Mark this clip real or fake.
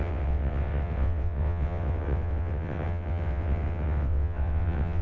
fake